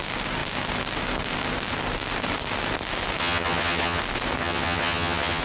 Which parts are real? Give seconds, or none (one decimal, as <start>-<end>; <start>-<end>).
0.0-3.2; 4.0-4.4